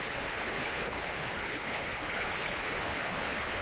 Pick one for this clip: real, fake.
fake